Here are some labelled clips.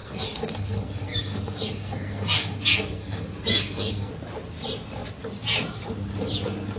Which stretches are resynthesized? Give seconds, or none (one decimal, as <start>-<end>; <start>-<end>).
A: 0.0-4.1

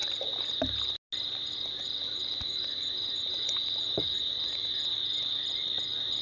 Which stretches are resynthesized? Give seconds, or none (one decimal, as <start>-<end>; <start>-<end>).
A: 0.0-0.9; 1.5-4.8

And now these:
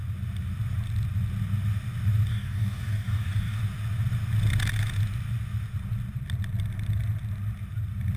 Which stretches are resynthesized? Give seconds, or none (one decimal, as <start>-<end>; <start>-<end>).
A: 2.3-3.6

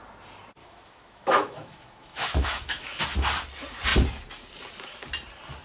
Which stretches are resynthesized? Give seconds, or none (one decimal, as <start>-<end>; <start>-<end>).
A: 0.6-3.0

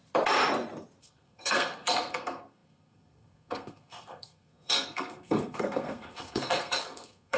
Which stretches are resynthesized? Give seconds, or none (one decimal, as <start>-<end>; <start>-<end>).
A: 1.0-7.4

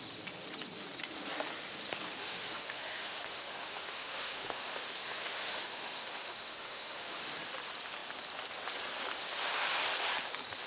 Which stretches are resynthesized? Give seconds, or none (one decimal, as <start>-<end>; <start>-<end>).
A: 2.2-7.3

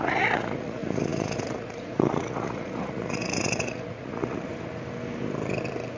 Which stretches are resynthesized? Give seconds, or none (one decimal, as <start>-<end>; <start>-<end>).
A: 0.0-4.5